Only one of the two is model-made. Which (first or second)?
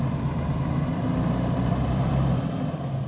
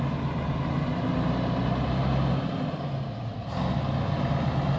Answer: first